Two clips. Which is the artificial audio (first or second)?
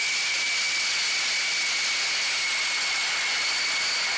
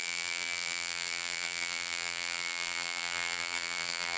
second